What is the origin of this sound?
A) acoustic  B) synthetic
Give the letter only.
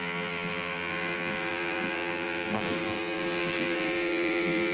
B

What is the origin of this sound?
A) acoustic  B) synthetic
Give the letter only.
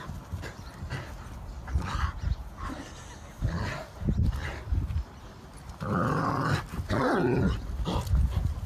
A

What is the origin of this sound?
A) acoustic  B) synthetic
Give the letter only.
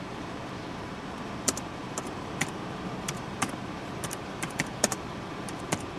B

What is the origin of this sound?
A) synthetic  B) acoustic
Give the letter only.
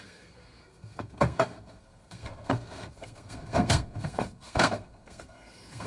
A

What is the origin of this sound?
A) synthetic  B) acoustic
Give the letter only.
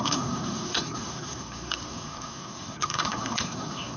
A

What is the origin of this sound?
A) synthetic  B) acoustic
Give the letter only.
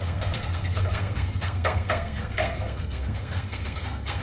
A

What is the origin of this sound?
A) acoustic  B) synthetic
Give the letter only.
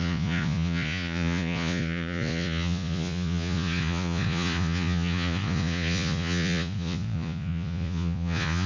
B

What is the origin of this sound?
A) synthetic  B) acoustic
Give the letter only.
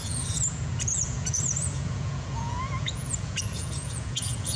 A